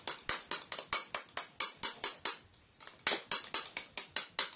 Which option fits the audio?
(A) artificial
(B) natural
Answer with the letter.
B